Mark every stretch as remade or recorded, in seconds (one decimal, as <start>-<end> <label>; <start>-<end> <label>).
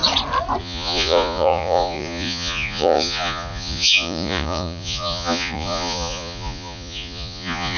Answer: 0.0-0.6 recorded; 0.6-7.8 remade